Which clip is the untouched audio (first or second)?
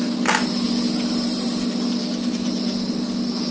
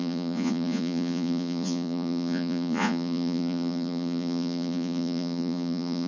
first